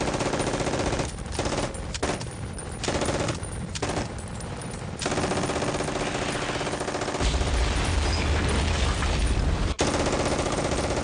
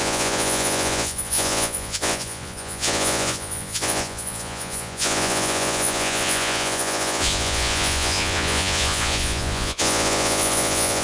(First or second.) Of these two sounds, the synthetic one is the second